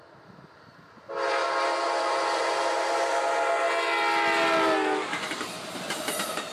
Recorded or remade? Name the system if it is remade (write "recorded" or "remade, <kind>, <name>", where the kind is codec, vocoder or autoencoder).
recorded